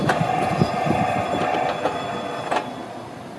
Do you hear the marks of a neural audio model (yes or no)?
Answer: no